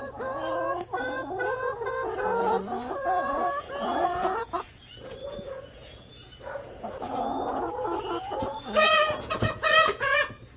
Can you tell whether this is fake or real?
fake